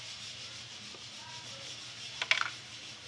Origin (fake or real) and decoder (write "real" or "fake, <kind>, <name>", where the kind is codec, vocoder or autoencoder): real